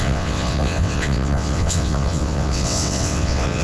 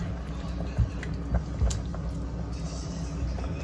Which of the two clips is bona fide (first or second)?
second